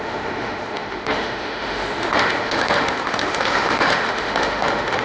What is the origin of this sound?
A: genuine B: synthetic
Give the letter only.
B